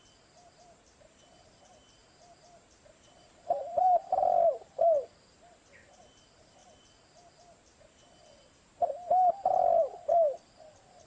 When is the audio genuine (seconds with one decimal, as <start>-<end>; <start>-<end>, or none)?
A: 2.0-3.8; 6.6-10.0